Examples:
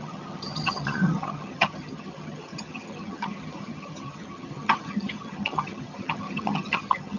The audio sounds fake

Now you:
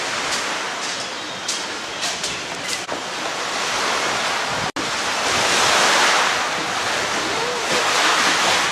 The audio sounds real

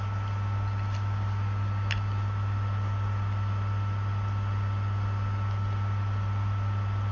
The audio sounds real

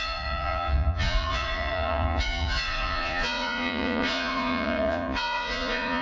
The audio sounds fake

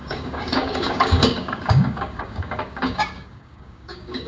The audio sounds fake